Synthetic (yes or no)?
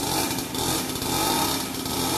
no